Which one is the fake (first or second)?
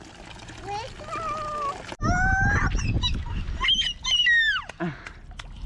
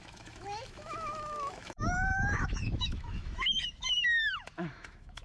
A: second